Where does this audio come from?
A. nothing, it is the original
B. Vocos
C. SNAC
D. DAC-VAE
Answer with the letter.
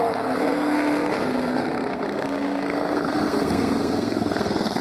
C